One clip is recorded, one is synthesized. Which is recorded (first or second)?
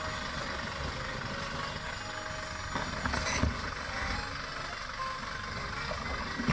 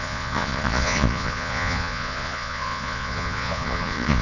first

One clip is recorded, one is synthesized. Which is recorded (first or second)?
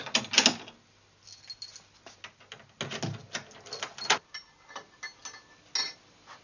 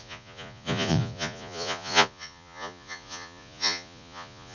first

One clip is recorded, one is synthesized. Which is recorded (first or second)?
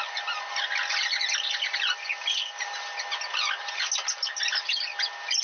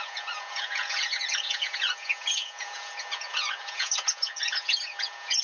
first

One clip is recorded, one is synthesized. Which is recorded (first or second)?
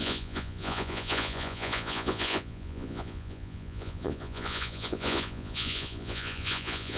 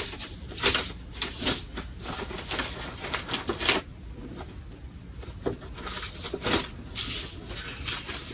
second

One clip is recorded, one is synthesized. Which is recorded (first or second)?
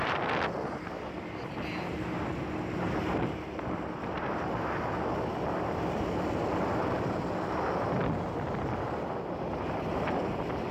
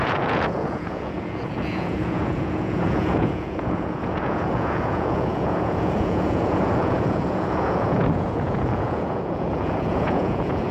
first